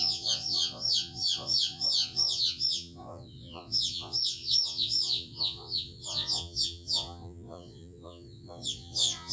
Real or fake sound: fake